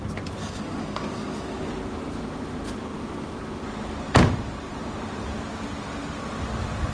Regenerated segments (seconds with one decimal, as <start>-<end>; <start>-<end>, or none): 0.4-1.7